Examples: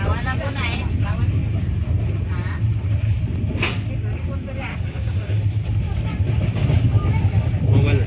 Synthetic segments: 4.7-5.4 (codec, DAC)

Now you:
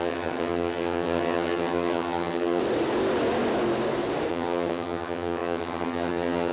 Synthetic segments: 0.0-2.6 (vocoder, HiFi-GAN); 4.3-6.5